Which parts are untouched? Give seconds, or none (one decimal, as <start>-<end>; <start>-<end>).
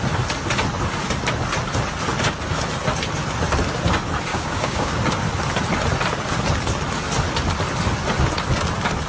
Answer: 0.0-4.3; 4.9-9.1